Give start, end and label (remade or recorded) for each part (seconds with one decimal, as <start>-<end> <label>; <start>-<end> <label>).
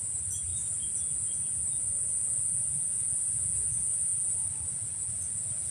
0.0-4.1 remade; 4.1-4.7 recorded; 4.7-5.7 remade